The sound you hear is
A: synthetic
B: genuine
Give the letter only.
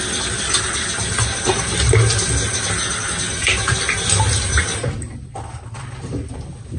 B